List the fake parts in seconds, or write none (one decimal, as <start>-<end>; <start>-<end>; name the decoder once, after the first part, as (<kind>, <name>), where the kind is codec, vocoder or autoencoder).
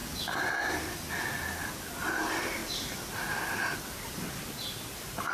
none